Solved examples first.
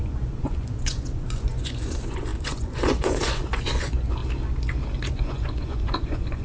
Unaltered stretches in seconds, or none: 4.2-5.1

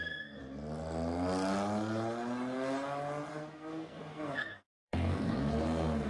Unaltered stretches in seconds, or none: 0.4-3.3

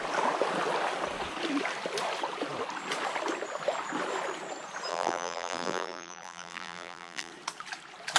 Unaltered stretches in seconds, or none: 0.0-4.9; 7.3-8.2

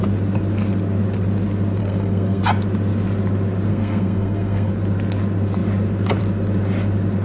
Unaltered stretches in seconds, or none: 0.0-1.8; 2.4-3.7; 4.7-7.2

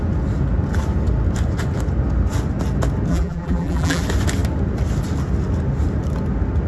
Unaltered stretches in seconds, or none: 0.0-3.1; 4.0-6.7

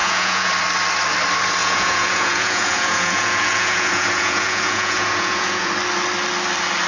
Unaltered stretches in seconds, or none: 0.5-1.6; 5.7-6.9

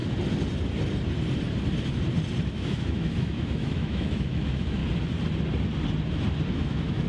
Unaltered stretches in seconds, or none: 0.0-2.5; 4.8-6.5